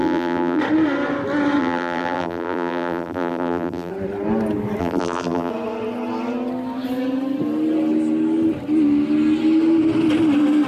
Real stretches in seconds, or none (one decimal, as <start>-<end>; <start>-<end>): 0.6-1.6; 3.9-4.8; 5.5-10.7